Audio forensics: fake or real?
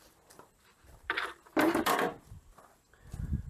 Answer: fake